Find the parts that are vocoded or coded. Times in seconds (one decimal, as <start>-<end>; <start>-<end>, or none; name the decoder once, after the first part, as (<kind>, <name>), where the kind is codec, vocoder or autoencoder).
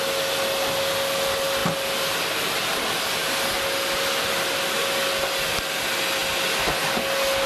none